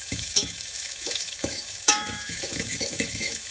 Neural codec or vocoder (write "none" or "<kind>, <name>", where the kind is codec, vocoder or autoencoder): autoencoder, DAC-VAE